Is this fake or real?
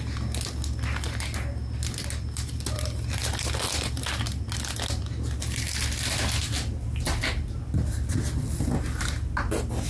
real